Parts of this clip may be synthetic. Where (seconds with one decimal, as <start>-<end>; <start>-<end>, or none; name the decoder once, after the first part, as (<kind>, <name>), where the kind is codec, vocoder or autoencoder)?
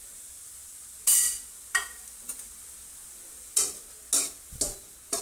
none